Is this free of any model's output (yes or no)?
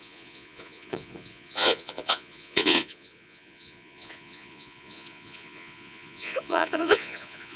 no